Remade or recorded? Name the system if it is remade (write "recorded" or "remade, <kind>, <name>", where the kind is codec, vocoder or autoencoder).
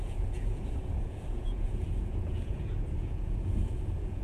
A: remade, vocoder, Vocos